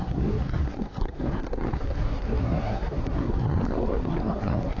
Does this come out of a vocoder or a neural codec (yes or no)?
yes